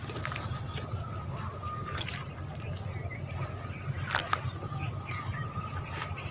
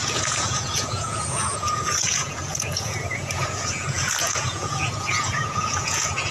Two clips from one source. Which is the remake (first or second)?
second